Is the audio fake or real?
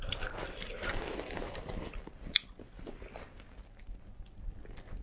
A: real